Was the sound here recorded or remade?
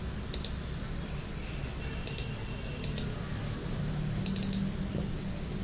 recorded